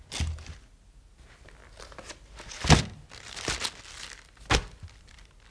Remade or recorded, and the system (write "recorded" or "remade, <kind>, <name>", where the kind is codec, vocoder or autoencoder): recorded